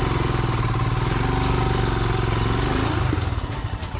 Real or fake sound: real